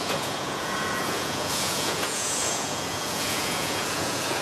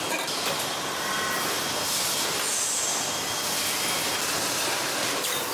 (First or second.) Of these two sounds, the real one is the second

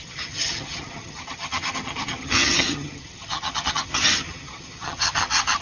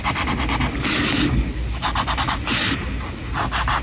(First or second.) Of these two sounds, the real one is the second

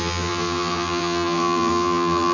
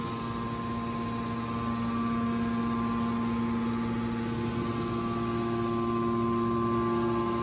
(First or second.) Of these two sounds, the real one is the second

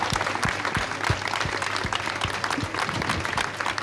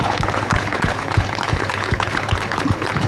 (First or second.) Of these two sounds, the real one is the first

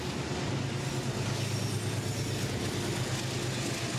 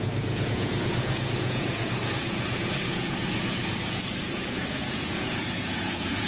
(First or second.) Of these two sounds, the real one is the first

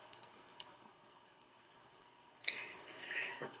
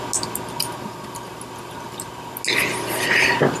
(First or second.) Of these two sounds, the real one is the second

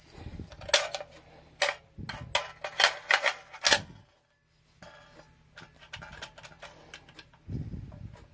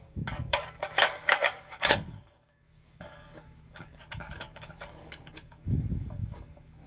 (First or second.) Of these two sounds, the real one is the first